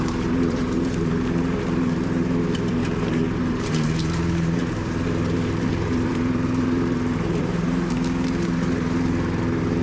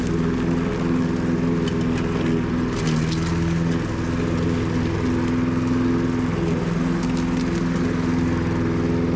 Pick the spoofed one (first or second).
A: first